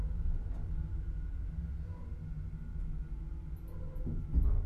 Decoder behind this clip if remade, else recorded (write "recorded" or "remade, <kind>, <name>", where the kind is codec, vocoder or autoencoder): recorded